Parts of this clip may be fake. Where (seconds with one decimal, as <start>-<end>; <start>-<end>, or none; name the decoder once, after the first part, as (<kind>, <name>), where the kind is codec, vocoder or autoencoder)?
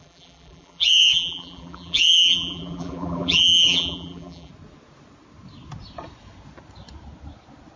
0.0-4.5 (vocoder, BigVGAN v2)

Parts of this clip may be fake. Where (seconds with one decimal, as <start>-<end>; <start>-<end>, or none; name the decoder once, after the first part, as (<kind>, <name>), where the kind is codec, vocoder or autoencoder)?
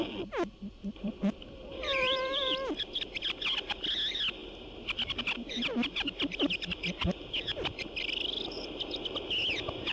0.8-3.0 (vocoder, BigVGAN v2)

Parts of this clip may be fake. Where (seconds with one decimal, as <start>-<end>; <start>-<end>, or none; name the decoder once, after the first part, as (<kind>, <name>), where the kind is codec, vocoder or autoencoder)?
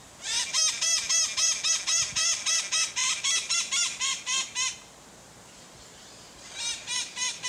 0.0-1.1 (vocoder, BigVGAN v2); 3.0-7.5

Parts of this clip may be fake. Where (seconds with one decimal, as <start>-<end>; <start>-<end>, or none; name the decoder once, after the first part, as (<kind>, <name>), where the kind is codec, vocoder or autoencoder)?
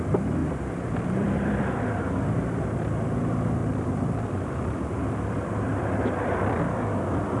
0.4-1.6 (vocoder, BigVGAN v2); 3.6-4.3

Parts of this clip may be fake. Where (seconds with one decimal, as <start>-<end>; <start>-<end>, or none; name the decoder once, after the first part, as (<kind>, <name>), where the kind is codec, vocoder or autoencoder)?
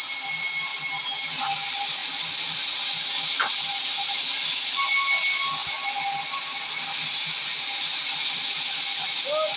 none